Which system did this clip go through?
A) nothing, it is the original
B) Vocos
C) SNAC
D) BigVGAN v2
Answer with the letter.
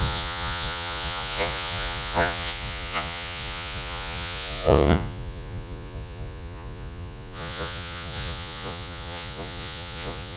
B